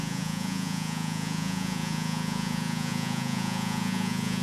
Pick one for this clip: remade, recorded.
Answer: remade